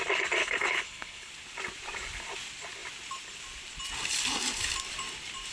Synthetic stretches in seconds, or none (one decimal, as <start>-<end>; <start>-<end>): 0.4-1.3